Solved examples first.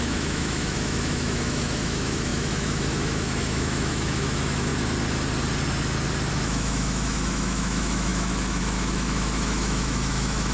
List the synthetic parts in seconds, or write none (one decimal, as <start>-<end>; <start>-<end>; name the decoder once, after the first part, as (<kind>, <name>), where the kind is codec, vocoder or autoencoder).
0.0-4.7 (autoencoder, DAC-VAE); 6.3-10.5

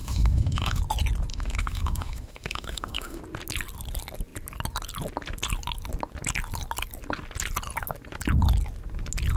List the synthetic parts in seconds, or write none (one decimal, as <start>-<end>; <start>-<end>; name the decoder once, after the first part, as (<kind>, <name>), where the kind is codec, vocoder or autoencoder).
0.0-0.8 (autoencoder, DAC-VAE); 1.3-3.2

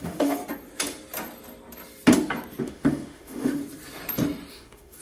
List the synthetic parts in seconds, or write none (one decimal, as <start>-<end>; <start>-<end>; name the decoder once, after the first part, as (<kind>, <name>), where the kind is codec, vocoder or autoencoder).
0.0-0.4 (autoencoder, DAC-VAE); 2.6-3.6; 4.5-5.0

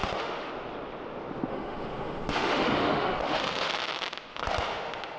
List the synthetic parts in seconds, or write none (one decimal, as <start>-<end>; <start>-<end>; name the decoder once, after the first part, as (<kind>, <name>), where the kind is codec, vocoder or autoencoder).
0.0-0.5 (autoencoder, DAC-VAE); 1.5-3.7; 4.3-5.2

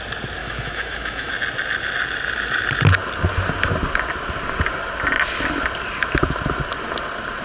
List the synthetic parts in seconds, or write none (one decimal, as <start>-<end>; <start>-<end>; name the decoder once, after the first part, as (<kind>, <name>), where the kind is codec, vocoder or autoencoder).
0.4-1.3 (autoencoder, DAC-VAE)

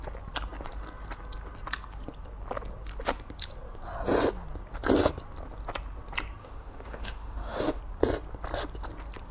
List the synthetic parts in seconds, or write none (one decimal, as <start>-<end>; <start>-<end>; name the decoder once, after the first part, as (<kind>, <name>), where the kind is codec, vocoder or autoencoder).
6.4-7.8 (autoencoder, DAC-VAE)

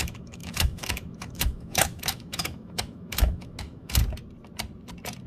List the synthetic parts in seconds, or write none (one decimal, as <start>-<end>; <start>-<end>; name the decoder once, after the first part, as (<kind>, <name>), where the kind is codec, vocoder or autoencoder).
0.0-4.0 (autoencoder, DAC-VAE)

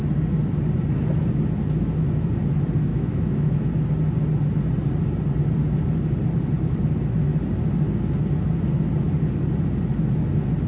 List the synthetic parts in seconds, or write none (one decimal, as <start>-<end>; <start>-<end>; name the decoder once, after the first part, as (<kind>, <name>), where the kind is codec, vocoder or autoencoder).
2.9-3.7 (autoencoder, DAC-VAE)